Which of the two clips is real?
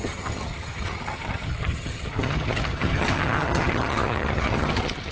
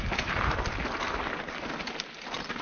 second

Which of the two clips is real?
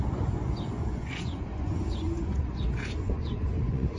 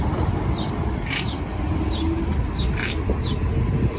second